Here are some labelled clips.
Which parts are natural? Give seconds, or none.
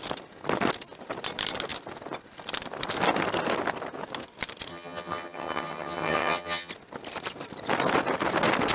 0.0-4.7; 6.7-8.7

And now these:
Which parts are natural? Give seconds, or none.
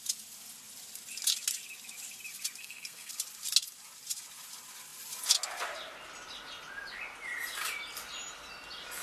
0.0-2.6; 3.1-9.0